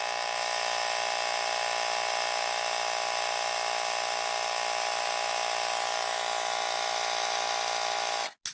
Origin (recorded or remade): recorded